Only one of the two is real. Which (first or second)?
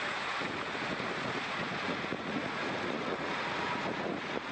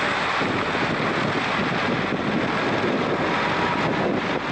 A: second